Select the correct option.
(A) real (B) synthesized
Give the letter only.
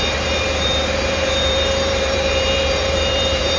B